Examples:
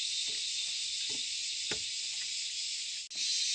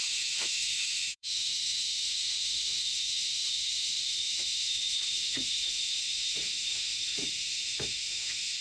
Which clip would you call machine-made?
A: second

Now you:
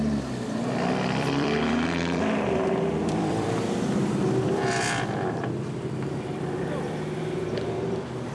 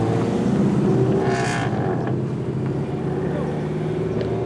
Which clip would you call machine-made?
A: first